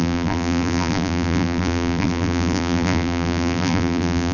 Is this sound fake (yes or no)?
yes